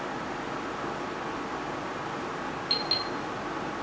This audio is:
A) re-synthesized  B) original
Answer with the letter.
B